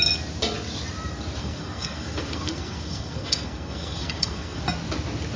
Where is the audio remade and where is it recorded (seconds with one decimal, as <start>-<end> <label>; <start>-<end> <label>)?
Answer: 0.0-1.4 recorded; 1.4-4.6 remade; 4.6-5.4 recorded